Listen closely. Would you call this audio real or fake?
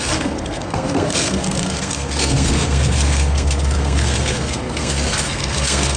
fake